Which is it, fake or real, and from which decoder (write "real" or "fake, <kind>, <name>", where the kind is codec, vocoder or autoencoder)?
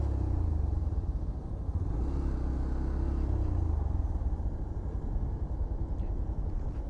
real